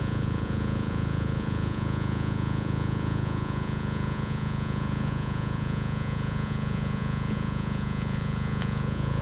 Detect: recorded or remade remade